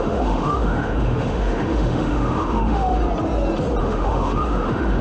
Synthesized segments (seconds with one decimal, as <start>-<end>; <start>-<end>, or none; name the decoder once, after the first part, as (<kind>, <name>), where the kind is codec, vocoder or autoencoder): 0.0-3.0 (autoencoder, DAC-VAE); 3.8-5.0

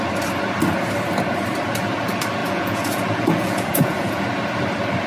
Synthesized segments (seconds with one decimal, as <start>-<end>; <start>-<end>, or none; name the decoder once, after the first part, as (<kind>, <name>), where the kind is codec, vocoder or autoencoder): 2.4-4.2 (vocoder, Vocos)

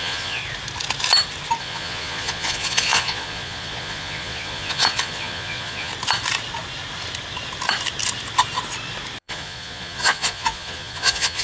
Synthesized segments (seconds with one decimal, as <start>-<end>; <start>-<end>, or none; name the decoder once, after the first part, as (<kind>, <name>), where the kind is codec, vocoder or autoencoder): 0.0-0.4 (vocoder, Vocos); 1.6-5.9; 9.2-11.4

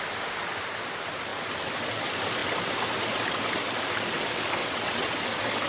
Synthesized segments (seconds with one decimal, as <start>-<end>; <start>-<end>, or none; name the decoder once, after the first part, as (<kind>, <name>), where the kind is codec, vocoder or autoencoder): 4.6-5.1 (vocoder, WaveNeXt)

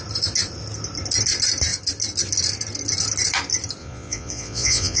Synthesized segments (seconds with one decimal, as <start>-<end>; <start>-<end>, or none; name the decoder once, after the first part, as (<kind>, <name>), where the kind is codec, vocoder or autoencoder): 3.8-5.0 (vocoder, Vocos)

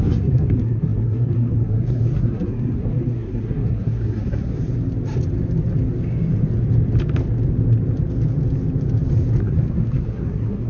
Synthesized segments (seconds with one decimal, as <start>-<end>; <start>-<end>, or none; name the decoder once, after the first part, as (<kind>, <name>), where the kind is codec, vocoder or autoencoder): 0.0-4.5 (codec, SNAC); 9.4-10.7